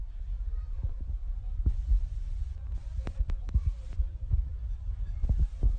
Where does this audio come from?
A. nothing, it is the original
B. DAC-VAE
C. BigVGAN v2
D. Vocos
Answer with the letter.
A